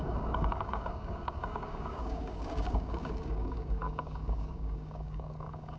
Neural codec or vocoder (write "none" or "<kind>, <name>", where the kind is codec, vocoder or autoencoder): codec, DAC